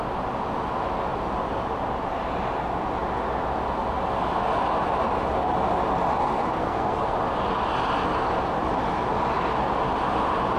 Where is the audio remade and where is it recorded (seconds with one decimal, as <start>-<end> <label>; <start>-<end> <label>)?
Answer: 0.0-6.2 recorded; 6.2-7.2 remade; 7.2-10.6 recorded